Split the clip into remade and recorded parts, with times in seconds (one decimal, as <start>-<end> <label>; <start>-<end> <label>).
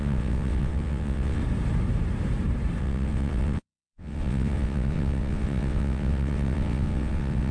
0.0-1.4 remade; 1.4-2.8 recorded; 2.8-7.5 remade